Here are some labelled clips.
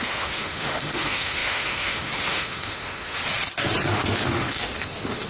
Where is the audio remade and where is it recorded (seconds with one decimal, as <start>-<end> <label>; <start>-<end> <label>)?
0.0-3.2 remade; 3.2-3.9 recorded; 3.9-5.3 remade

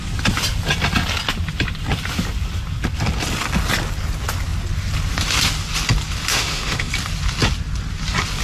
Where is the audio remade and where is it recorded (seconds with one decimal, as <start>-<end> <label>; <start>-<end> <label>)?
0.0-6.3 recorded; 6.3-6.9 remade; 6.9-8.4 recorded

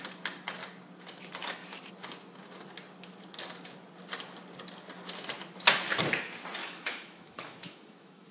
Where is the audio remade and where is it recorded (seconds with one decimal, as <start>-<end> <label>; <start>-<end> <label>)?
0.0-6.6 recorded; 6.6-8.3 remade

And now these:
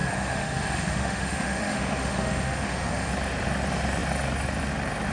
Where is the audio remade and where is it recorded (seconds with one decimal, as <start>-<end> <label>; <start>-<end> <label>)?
0.0-3.1 remade; 3.1-5.1 recorded